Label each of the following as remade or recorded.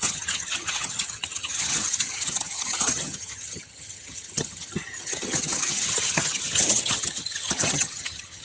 remade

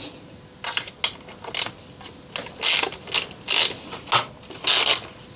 recorded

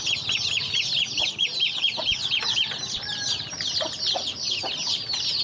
recorded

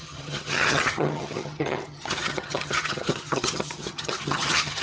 remade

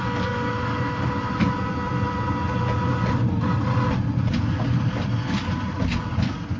recorded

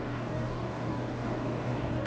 remade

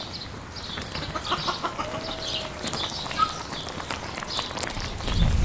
recorded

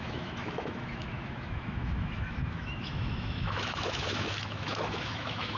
remade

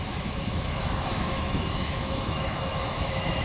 remade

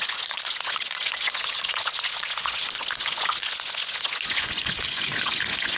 remade